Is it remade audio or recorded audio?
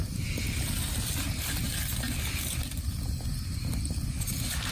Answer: recorded